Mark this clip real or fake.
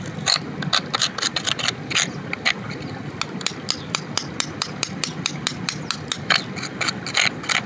real